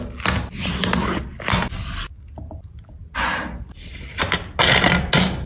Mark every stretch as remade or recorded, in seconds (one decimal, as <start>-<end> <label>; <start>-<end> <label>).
0.0-5.5 recorded